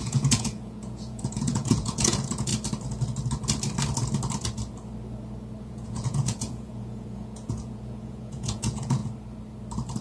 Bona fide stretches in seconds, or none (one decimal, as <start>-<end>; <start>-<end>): 2.5-5.6; 9.0-10.0